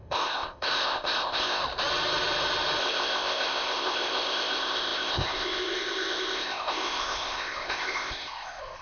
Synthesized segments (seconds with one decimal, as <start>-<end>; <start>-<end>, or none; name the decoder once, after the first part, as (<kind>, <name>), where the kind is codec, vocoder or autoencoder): 0.0-1.6 (codec, ZipCodec); 2.8-8.8